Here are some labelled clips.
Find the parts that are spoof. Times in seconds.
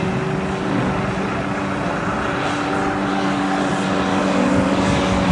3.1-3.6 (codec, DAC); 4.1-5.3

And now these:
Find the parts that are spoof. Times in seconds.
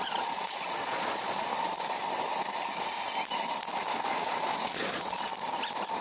0.0-1.5 (vocoder, Vocos); 4.1-5.3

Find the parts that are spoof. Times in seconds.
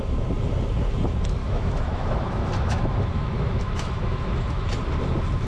1.4-4.7 (autoencoder, DAC-VAE)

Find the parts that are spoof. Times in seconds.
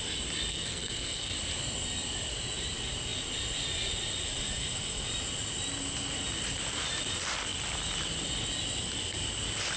0.5-1.3 (codec, SNAC)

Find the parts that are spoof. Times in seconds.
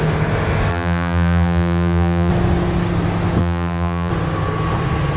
0.7-2.3 (vocoder, BigVGAN v2); 3.4-4.1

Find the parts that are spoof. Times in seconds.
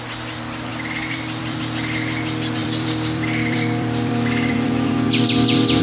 0.7-1.6 (vocoder, BigVGAN v2); 2.6-5.8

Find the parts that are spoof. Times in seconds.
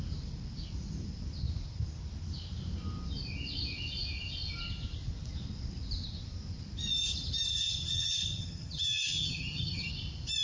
7.5-9.9 (vocoder, HiFi-GAN)